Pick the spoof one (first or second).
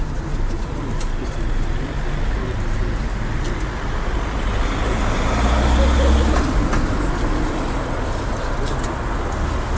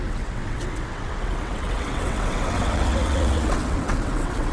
second